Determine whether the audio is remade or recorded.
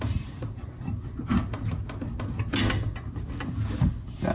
recorded